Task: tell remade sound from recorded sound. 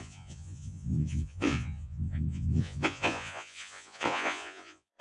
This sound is remade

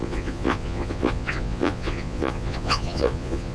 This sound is remade